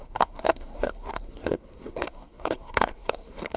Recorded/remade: remade